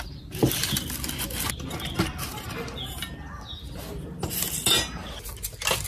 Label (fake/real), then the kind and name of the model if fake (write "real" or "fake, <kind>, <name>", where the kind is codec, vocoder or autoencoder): real